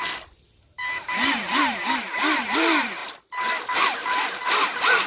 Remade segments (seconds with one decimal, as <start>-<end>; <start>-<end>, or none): none